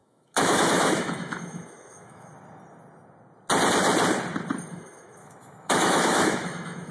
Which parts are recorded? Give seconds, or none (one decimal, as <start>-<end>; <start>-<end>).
2.3-4.7